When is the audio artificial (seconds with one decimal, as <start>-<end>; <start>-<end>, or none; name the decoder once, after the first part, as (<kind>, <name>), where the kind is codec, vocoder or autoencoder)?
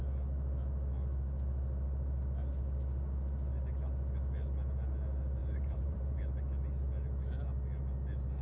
5.4-6.2 (vocoder, BigVGAN v2)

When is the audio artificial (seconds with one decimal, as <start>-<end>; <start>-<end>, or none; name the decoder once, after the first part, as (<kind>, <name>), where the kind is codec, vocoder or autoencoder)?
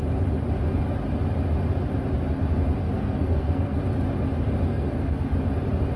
2.8-3.8 (codec, SNAC); 4.7-5.3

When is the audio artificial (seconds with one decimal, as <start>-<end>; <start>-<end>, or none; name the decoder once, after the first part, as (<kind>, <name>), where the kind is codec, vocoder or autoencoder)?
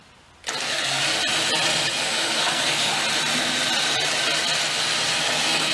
0.6-1.0 (codec, SNAC); 2.0-2.9; 5.2-5.7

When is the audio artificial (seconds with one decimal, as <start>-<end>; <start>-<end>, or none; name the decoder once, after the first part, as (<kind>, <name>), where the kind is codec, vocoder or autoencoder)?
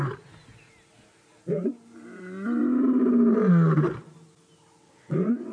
4.8-5.5 (vocoder, WaveNeXt)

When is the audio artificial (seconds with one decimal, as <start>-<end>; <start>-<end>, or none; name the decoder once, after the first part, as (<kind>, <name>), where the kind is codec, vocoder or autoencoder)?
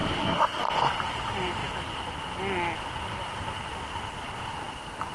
0.0-0.6 (codec, SNAC)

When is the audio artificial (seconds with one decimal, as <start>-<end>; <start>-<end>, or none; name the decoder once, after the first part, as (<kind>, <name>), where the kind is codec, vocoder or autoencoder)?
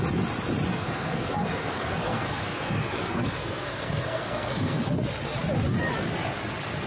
0.7-4.8 (codec, SNAC)